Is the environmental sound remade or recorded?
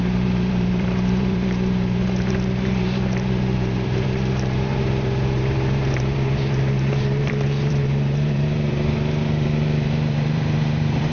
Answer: remade